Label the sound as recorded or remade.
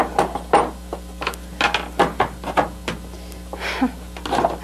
recorded